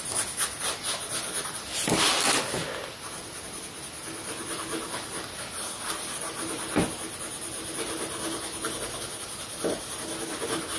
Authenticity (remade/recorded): recorded